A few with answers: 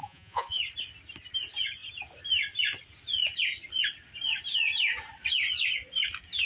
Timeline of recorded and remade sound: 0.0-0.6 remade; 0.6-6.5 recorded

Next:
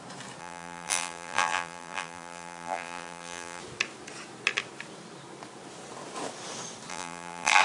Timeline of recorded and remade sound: 0.0-0.4 recorded; 0.4-3.6 remade; 3.6-6.9 recorded; 6.9-7.6 remade

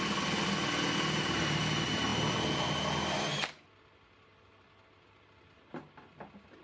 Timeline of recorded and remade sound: 0.0-6.6 recorded